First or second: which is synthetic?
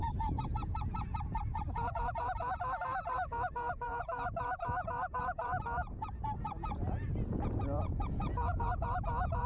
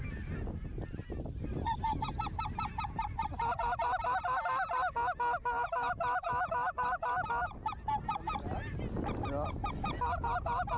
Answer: first